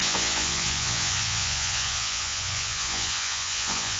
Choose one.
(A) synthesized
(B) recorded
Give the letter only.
A